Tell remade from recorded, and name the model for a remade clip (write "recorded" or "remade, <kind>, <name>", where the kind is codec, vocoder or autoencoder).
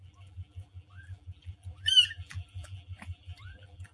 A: remade, vocoder, BigVGAN v2